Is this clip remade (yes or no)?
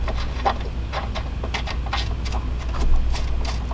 no